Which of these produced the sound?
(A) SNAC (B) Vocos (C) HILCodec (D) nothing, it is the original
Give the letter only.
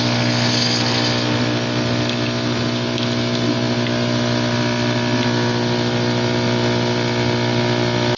D